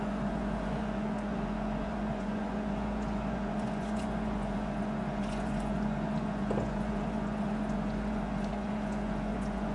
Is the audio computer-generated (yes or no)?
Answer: yes